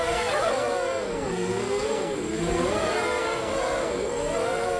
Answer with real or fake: fake